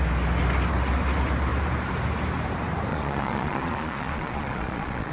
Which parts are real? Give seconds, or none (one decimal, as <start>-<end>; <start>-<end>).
0.0-2.9

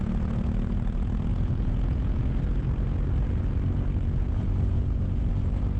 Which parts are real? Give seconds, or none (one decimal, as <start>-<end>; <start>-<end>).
0.0-1.3; 2.4-4.2; 5.3-5.8

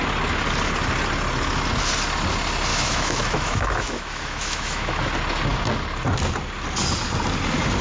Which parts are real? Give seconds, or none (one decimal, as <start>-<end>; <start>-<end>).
0.0-2.7; 5.1-7.8